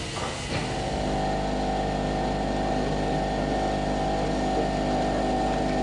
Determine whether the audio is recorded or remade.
recorded